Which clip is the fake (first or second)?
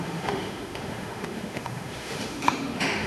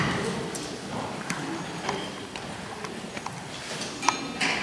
first